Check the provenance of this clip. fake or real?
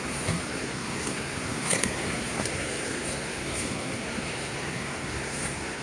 fake